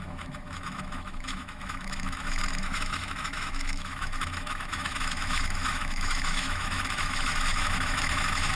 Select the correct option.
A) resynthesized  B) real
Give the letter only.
A